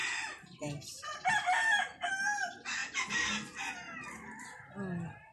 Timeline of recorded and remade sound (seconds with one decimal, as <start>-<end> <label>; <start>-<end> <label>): 0.0-2.1 remade; 2.1-5.3 recorded